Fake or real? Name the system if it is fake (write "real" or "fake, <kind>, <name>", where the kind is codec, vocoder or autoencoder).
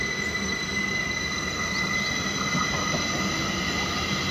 real